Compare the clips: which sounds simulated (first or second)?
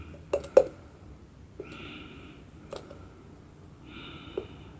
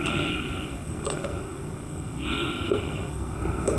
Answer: second